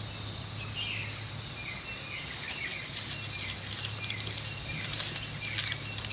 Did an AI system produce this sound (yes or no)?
no